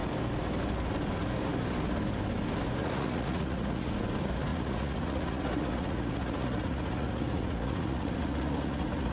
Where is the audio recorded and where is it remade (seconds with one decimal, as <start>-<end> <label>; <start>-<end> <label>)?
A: 0.0-2.8 recorded; 2.8-3.9 remade; 3.9-4.5 recorded; 4.5-9.1 remade